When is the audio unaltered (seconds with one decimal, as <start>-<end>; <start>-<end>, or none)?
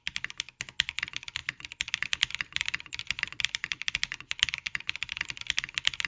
0.0-1.4; 5.1-6.1